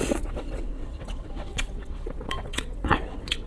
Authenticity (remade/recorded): remade